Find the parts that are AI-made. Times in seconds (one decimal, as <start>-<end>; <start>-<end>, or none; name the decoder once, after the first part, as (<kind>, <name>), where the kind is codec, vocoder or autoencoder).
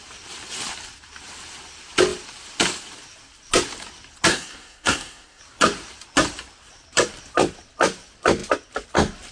4.3-5.4 (codec, SNAC)